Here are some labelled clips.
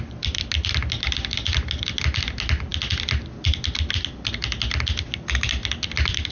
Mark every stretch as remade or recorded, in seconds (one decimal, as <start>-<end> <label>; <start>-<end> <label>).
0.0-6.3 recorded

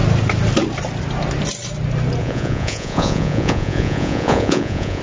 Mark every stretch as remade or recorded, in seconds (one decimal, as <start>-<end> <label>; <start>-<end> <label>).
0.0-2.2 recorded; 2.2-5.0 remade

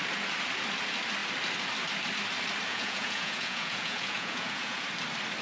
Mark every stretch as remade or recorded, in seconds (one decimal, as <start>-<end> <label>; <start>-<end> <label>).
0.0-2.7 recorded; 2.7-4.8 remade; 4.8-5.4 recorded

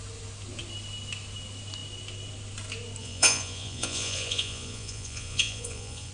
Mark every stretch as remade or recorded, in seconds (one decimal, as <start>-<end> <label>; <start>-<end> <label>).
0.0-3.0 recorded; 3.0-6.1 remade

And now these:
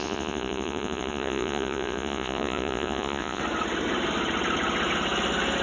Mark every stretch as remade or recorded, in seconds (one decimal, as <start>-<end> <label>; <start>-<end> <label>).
0.0-3.4 remade; 3.4-5.6 recorded

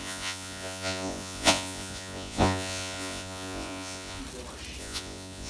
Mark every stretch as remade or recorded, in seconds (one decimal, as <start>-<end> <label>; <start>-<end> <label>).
0.0-4.2 remade; 4.2-4.8 recorded; 4.8-5.5 remade

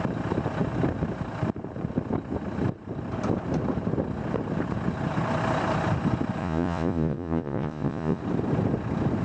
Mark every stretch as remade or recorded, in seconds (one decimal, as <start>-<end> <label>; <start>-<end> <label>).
0.0-6.4 recorded; 6.4-8.2 remade; 8.2-9.2 recorded